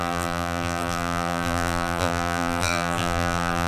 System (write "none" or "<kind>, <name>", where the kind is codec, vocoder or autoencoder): vocoder, BigVGAN v2